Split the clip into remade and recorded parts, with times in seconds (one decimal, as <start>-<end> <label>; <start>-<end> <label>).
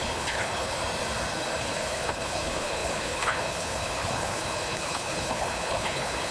0.0-0.8 remade; 0.8-1.6 recorded; 1.6-6.3 remade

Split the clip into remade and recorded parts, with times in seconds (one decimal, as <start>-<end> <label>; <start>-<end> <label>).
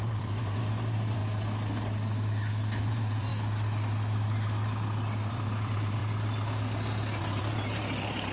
0.0-1.2 remade; 1.2-2.9 recorded; 2.9-3.3 remade; 3.3-5.3 recorded; 5.3-6.0 remade; 6.0-7.2 recorded; 7.2-8.3 remade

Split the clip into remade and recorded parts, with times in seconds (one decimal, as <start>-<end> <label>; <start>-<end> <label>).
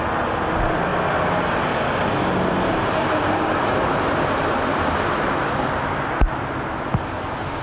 0.0-7.6 recorded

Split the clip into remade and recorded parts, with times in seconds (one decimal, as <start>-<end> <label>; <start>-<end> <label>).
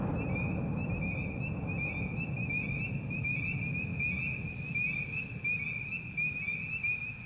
0.0-7.3 recorded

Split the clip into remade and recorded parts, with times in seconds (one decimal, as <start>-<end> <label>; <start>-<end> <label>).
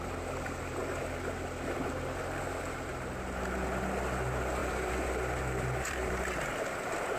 0.0-4.6 recorded; 4.6-6.4 remade; 6.4-7.2 recorded